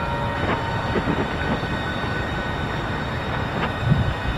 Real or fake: real